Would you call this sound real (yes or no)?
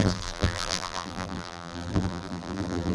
no